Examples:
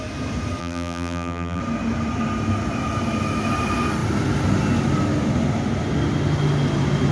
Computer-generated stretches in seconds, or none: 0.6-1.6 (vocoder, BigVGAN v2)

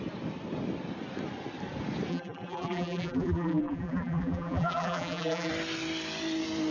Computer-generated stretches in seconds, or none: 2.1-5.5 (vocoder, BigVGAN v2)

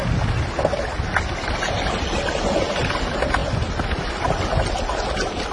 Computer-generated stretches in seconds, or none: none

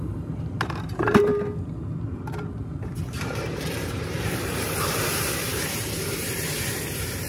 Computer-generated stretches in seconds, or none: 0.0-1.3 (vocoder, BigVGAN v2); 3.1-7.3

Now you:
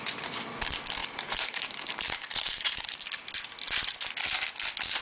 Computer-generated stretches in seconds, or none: 1.0-3.0 (vocoder, BigVGAN v2)

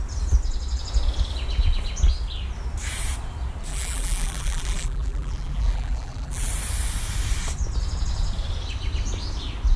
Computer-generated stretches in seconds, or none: 3.7-6.5 (vocoder, BigVGAN v2)

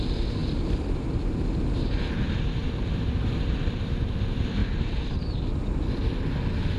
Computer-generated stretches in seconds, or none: 2.6-3.9 (vocoder, BigVGAN v2); 4.6-5.8